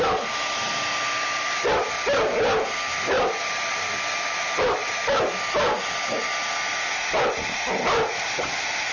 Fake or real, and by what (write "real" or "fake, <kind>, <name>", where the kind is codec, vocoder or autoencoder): real